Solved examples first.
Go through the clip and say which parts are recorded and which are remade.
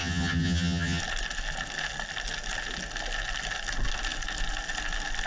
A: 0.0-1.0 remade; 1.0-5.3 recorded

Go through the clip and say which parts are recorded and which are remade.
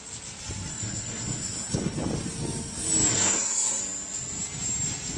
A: 0.0-0.7 recorded; 0.7-1.7 remade; 1.7-3.1 recorded; 3.1-3.8 remade; 3.8-5.2 recorded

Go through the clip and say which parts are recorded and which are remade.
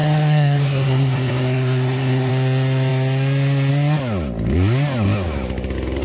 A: 0.0-2.3 remade; 2.3-6.0 recorded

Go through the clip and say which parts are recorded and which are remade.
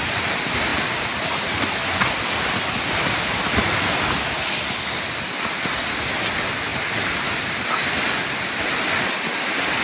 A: 0.0-9.8 recorded